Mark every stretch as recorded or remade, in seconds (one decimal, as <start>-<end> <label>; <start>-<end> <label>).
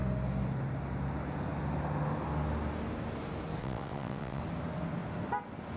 0.0-3.6 recorded; 3.6-4.4 remade; 4.4-5.8 recorded